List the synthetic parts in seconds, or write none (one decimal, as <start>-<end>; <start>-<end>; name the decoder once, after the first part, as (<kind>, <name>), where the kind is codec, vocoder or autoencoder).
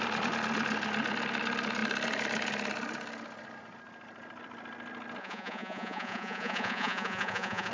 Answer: 5.2-7.7 (vocoder, Vocos)